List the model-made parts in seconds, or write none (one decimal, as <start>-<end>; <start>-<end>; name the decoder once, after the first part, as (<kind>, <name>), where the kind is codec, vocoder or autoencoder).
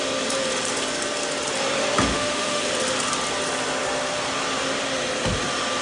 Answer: 2.1-2.6 (autoencoder, DAC-VAE)